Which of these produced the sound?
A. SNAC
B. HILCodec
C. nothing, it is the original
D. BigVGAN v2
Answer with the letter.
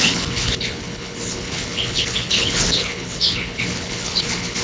B